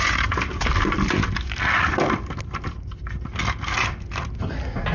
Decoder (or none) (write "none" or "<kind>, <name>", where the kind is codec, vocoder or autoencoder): none